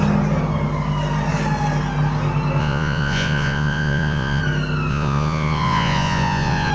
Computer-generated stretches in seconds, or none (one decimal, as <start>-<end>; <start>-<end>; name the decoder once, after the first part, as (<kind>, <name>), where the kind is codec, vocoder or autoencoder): 2.6-4.4 (vocoder, Vocos); 4.9-6.7